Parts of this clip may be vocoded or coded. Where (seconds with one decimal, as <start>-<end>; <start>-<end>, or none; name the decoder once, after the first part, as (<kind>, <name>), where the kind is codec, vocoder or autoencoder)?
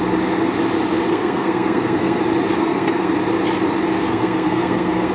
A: 1.1-2.2 (codec, SNAC); 2.6-3.1; 4.1-5.1